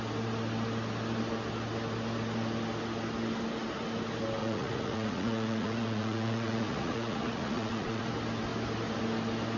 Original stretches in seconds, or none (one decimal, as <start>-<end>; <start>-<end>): 0.0-4.4; 8.1-9.6